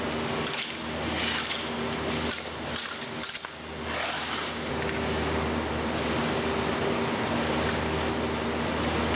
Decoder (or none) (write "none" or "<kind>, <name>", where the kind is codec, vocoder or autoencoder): none